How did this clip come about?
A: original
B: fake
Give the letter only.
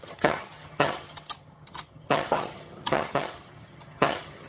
B